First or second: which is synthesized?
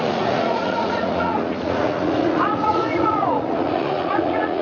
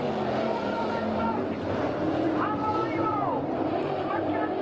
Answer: first